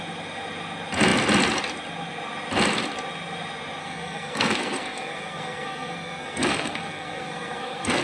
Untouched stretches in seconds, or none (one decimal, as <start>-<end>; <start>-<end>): 0.0-3.8